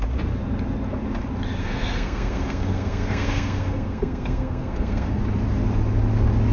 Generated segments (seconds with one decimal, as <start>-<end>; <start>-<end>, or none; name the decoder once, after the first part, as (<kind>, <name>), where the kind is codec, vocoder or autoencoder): 1.6-5.2 (codec, SNAC)